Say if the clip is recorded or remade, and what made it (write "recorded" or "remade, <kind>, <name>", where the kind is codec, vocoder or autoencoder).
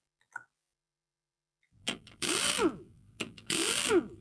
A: remade, vocoder, BigVGAN v2